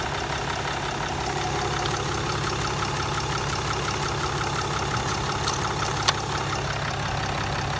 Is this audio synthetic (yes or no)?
no